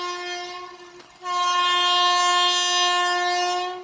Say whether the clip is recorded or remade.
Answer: recorded